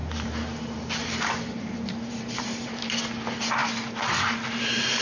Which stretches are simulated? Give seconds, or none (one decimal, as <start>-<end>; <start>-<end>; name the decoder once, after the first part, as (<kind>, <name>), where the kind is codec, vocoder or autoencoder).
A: 0.0-3.0 (vocoder, BigVGAN v2)